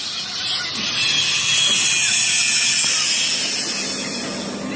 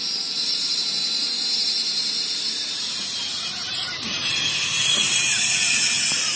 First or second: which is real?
first